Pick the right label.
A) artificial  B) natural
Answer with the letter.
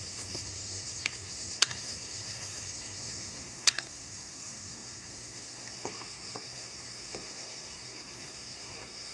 A